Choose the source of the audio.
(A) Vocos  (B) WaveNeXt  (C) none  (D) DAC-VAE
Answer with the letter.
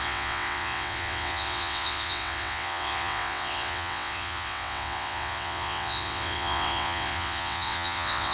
B